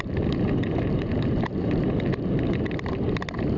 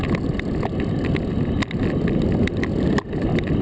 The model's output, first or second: first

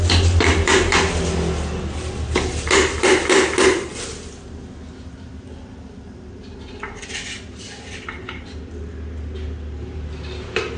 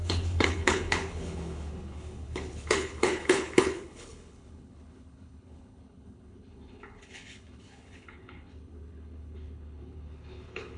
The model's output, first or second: second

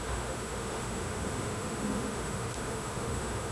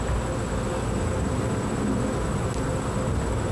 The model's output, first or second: first